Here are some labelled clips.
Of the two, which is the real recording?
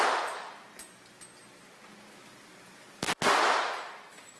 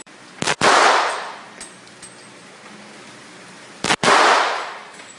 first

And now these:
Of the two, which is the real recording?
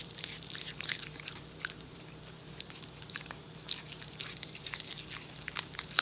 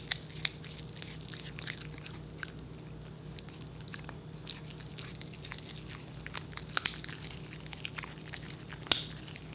second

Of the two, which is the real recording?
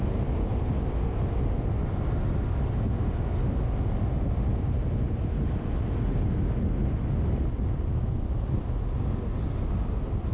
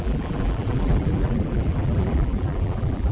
first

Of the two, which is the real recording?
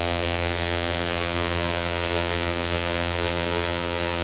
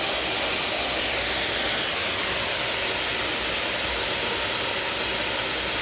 second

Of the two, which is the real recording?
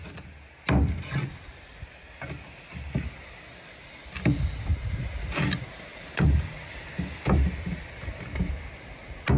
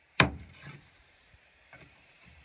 first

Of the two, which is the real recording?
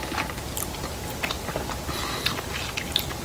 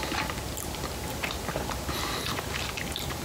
first